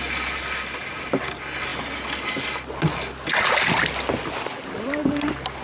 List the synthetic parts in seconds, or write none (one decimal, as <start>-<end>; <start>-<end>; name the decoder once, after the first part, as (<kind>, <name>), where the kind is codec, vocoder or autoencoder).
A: none